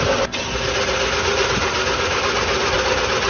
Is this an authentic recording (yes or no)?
yes